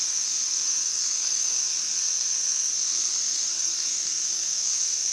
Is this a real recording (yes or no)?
no